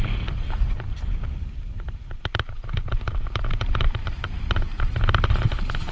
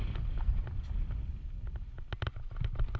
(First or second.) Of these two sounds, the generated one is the first